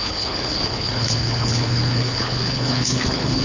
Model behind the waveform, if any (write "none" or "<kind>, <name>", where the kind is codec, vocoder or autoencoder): codec, HILCodec